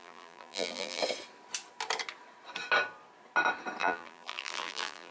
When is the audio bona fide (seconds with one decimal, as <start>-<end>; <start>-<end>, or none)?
1.0-3.8